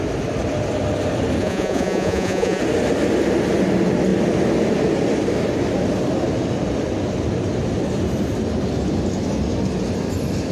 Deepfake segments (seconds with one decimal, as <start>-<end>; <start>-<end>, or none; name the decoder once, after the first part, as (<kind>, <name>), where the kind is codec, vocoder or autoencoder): 1.4-2.6 (vocoder, Vocos)